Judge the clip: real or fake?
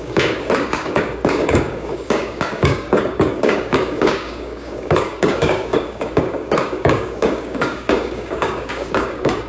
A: fake